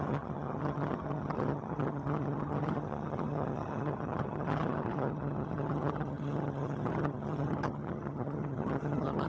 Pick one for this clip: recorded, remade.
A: remade